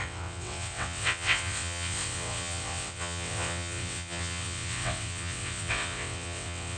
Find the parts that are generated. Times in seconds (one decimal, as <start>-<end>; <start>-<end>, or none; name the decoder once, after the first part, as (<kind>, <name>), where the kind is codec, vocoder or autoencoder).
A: 0.0-6.8 (vocoder, WaveNeXt)